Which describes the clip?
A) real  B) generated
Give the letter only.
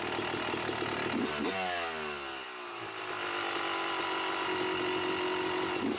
A